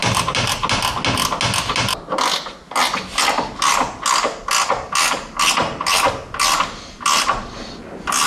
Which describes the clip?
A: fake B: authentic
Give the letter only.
B